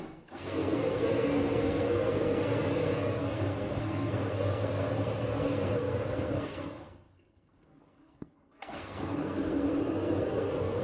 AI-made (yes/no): yes